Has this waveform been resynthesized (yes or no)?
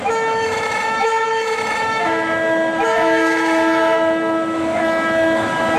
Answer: yes